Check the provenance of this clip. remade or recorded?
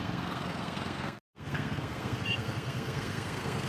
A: remade